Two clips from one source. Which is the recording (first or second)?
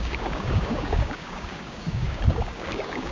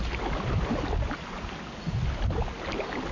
second